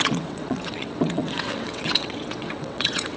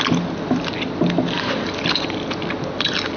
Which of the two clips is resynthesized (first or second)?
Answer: first